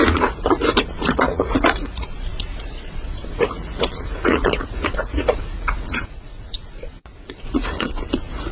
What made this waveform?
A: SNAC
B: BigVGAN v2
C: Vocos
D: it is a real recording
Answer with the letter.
C